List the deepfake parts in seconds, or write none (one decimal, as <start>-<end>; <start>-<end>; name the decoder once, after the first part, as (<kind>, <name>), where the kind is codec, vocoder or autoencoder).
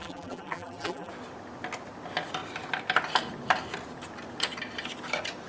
0.0-1.1 (vocoder, BigVGAN v2)